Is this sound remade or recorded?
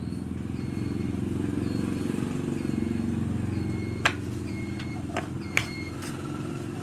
recorded